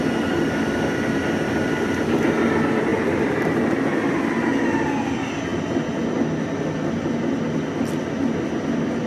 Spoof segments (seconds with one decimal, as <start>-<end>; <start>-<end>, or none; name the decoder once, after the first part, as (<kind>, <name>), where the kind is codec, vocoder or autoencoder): 2.9-4.2 (vocoder, BigVGAN v2)